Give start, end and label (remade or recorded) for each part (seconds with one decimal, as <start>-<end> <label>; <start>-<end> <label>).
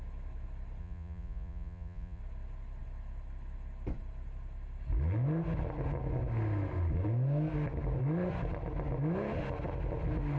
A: 0.0-0.8 recorded; 0.8-2.2 remade; 2.2-10.4 recorded